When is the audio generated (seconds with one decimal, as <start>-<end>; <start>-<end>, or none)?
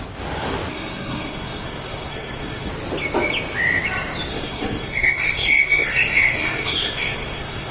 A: 0.7-2.7; 4.3-7.7